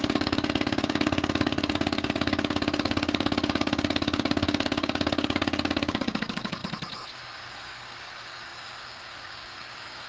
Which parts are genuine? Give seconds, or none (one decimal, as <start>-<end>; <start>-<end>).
6.6-7.2